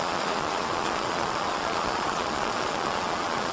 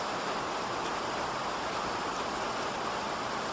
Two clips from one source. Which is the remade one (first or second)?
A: first